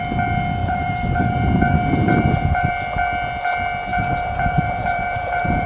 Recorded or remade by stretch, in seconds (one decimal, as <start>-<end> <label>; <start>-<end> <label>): 0.0-0.6 recorded; 0.6-2.7 remade; 2.7-3.9 recorded; 3.9-5.7 remade